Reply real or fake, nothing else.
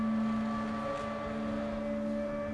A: real